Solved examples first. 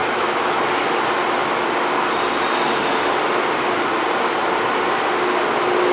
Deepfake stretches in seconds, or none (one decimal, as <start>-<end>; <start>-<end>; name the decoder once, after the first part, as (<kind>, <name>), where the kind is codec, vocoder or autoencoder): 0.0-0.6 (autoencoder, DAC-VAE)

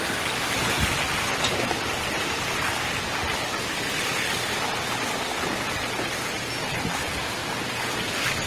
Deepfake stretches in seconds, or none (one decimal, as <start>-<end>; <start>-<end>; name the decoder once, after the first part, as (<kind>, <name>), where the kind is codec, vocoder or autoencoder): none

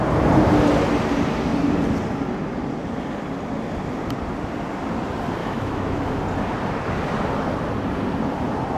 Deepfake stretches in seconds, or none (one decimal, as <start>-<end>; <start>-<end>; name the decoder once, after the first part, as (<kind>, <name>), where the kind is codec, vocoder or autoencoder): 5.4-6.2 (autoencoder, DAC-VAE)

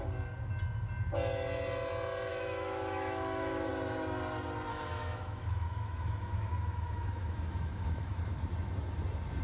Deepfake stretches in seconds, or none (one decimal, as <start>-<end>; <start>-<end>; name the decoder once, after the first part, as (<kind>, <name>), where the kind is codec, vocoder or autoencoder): 2.3-3.7 (autoencoder, DAC-VAE); 4.7-8.2